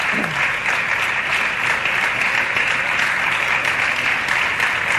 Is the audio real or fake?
real